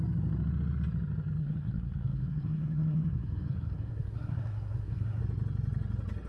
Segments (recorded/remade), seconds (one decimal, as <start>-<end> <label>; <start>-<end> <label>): 0.0-1.4 recorded; 1.4-5.2 remade; 5.2-6.3 recorded